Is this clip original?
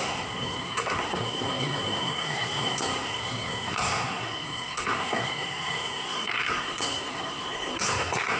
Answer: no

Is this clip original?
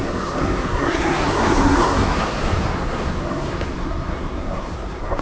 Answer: no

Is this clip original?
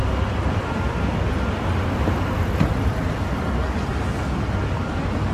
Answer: yes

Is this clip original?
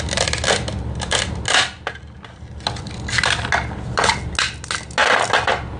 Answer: yes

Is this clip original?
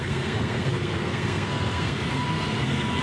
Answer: no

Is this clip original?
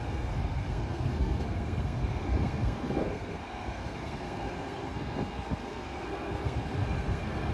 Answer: no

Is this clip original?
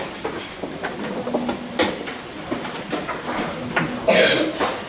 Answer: yes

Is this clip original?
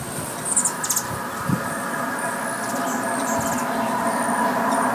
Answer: yes